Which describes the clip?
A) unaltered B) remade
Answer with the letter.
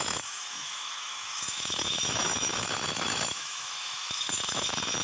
B